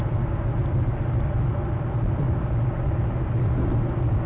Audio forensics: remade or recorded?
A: recorded